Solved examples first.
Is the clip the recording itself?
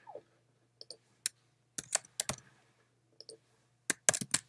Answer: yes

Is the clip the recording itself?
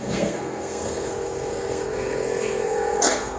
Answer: no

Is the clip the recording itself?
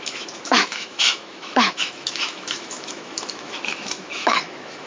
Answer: no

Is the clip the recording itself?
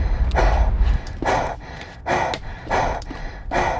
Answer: yes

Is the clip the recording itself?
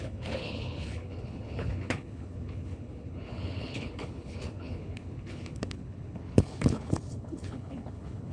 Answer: no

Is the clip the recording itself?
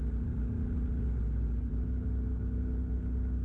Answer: yes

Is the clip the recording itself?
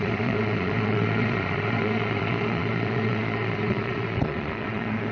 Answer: no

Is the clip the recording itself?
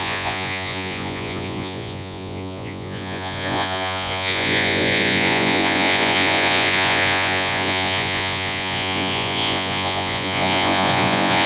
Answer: no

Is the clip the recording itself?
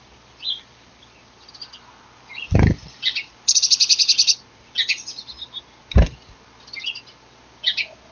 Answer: yes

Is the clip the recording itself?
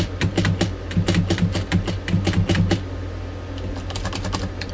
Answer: yes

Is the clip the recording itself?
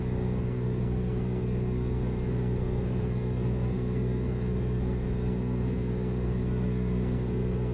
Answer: no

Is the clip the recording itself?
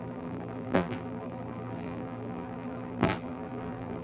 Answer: no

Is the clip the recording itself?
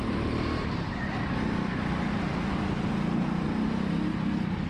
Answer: yes